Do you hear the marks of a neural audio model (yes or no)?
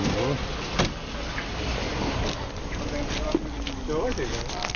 no